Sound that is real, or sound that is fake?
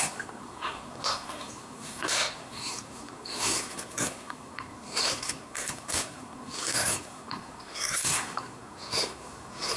fake